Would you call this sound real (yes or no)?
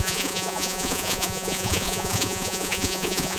no